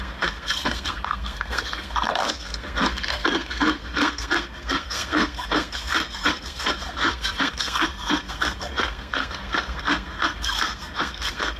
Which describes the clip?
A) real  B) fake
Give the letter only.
B